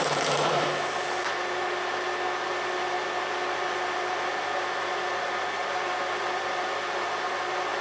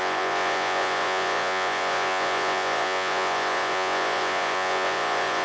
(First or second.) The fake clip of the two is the second